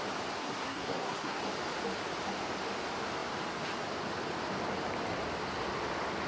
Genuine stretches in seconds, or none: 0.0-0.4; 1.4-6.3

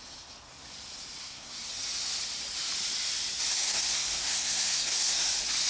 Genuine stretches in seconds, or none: 0.0-1.2; 1.7-3.5; 5.3-5.7